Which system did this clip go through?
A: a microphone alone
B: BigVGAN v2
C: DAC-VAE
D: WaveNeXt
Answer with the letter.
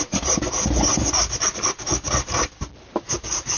A